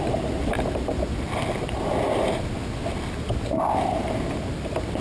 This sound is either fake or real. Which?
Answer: real